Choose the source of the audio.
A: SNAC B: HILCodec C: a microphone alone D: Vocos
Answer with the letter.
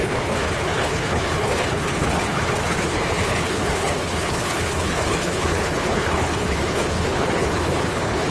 B